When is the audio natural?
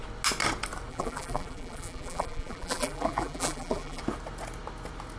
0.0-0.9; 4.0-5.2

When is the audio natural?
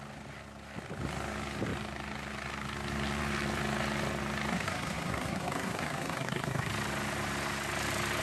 0.0-4.5; 6.7-8.2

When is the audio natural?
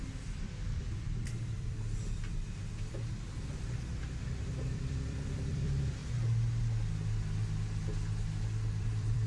0.0-0.8; 6.0-8.8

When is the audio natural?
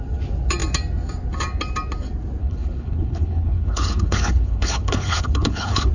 0.0-2.4